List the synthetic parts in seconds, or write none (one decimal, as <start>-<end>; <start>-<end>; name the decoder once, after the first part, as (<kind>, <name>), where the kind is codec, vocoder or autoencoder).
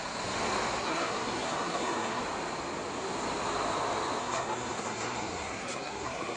0.8-2.2 (codec, SNAC); 4.2-6.4